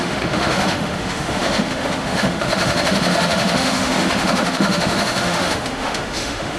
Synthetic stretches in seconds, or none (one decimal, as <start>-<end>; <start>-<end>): 0.0-6.6